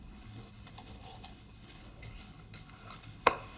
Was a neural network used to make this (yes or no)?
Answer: yes